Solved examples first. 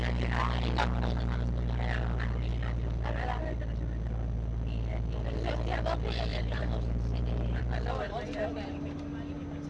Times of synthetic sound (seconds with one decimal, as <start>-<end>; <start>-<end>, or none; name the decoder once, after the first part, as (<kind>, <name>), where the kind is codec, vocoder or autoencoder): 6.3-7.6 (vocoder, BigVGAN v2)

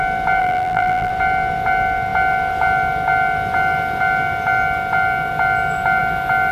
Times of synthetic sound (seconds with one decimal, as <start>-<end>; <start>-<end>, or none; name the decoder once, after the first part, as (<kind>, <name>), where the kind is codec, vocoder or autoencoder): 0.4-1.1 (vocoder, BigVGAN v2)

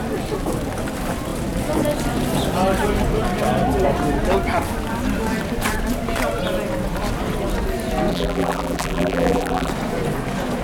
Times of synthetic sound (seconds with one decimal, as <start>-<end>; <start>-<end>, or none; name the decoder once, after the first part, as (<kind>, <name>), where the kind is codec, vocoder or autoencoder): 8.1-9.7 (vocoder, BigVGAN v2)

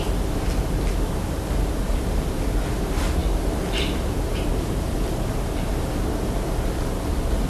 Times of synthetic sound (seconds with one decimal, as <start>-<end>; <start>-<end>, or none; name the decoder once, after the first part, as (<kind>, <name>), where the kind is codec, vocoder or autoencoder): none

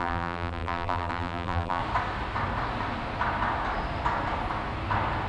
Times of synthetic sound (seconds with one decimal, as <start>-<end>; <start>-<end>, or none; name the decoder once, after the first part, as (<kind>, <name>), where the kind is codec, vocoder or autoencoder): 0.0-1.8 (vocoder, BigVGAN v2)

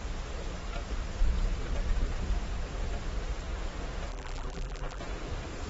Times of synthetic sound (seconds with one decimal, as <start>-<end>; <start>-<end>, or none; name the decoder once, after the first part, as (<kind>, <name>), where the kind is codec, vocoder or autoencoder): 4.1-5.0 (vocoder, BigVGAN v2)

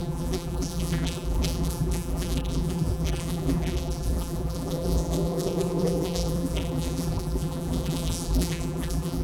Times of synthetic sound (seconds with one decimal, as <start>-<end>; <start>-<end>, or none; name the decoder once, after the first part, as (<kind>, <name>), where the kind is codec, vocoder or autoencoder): 0.0-9.2 (vocoder, BigVGAN v2)

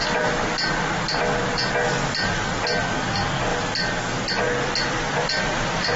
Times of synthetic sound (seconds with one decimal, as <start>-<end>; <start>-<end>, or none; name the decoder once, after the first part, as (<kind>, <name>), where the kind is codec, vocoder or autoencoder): none